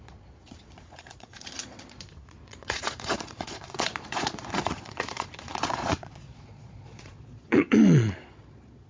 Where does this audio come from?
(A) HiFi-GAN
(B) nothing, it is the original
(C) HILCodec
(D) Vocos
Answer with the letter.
D